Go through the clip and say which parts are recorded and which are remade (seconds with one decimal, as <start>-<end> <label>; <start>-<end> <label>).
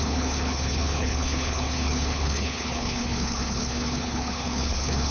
0.0-5.1 remade